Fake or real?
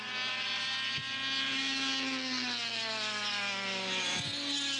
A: real